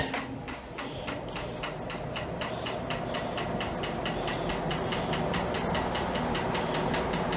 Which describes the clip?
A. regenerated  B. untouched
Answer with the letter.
B